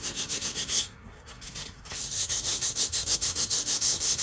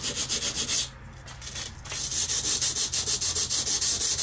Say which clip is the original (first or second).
second